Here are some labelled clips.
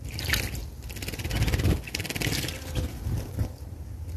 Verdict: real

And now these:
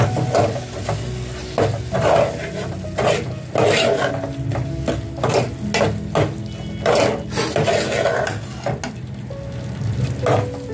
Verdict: real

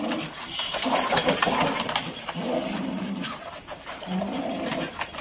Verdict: fake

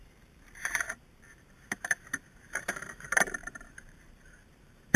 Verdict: fake